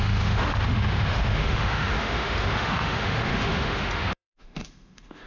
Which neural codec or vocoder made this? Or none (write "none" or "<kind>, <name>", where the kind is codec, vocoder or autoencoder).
autoencoder, DAC-VAE